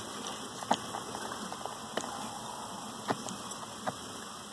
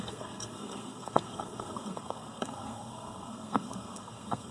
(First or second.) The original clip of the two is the first